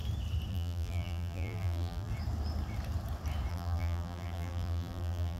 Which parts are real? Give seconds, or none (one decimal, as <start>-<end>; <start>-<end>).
0.0-0.5; 2.1-3.5